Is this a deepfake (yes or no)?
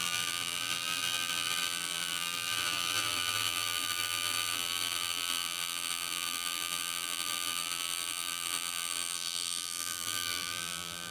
yes